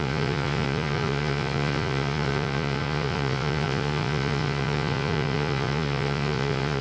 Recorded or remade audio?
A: remade